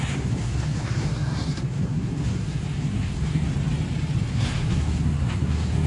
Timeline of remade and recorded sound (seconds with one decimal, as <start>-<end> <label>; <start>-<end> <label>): 0.0-3.5 remade; 3.5-4.3 recorded; 4.3-5.9 remade

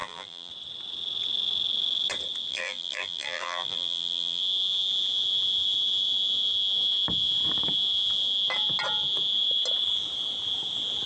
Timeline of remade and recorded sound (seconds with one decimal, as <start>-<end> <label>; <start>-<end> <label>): 0.0-0.5 remade; 0.5-2.5 recorded; 2.5-4.4 remade; 4.4-11.1 recorded

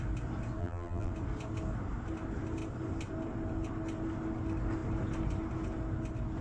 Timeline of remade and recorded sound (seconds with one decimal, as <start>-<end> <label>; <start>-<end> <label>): 0.0-0.6 recorded; 0.6-1.1 remade; 1.1-6.4 recorded

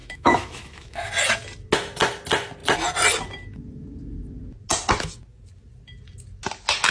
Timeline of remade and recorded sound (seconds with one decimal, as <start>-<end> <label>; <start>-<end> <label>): 0.0-1.1 remade; 1.1-6.9 recorded

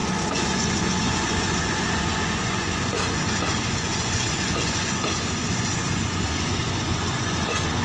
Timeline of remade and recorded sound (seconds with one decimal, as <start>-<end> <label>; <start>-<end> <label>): 0.0-7.8 remade